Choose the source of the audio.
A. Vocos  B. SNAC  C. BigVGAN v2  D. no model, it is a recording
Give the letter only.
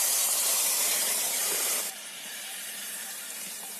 C